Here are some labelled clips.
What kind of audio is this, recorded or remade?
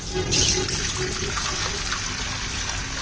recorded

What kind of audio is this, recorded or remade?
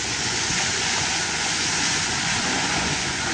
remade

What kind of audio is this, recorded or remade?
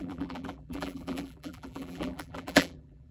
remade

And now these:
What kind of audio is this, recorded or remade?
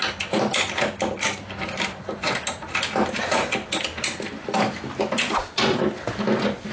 recorded